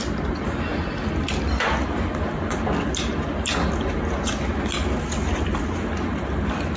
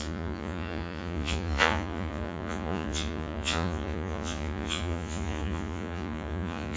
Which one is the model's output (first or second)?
second